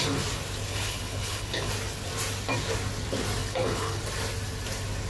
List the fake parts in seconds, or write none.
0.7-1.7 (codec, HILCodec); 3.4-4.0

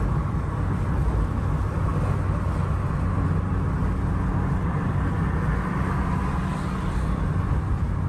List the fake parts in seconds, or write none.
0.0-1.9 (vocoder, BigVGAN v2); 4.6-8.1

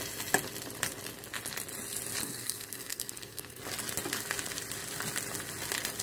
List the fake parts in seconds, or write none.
2.2-3.6 (codec, SNAC)